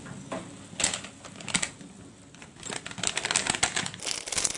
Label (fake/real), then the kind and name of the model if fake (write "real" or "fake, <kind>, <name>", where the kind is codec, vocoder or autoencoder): real